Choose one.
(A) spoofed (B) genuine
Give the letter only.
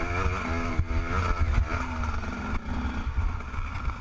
B